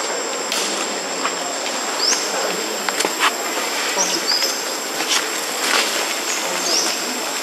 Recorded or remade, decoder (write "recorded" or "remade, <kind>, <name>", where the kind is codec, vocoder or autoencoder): recorded